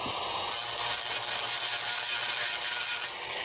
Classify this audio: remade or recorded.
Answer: recorded